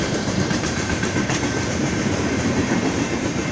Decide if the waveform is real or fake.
fake